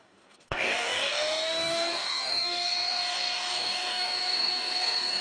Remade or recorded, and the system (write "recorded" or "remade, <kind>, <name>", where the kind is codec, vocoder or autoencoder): remade, codec, DAC